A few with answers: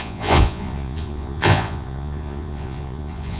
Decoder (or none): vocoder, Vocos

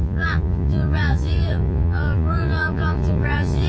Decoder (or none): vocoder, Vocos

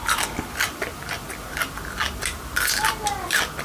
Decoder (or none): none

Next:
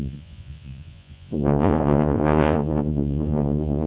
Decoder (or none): vocoder, Vocos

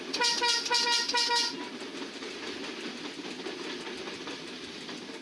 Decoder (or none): none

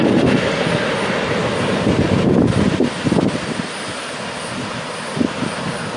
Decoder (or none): none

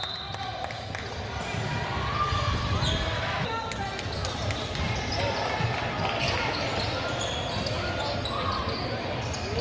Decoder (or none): none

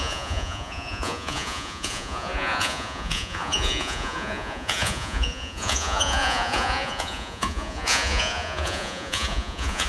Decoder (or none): vocoder, Vocos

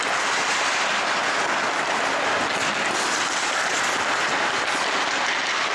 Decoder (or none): none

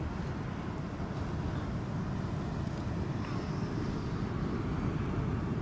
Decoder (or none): none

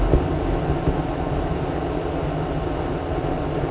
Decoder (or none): none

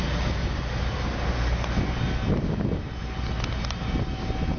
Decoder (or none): none